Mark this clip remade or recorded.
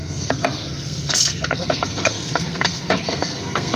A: remade